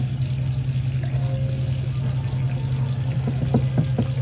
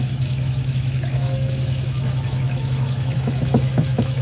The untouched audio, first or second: first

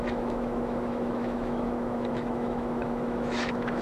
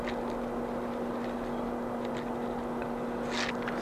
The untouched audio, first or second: second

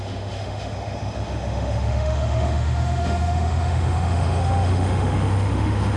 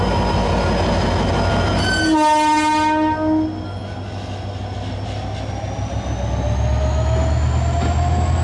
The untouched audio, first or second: second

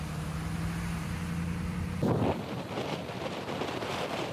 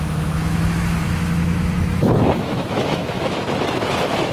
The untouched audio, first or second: first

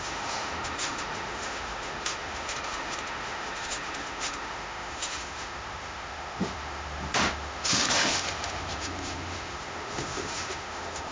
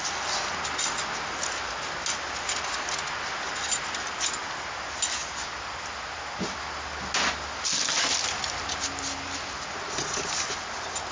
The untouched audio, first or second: second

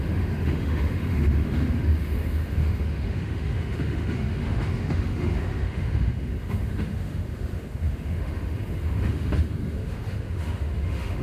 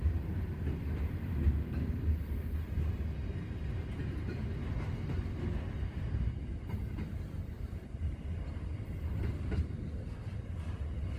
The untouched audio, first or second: second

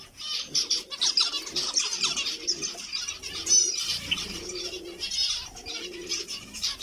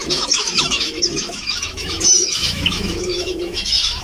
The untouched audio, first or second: first